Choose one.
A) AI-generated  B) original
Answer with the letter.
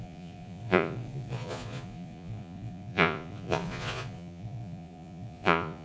A